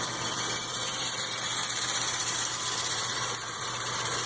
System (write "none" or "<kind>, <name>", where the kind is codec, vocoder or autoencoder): vocoder, BigVGAN v2